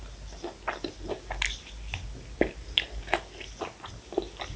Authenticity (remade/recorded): recorded